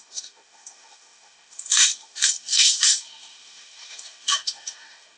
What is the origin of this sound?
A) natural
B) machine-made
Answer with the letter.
B